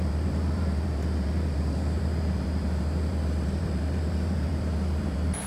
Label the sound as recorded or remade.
remade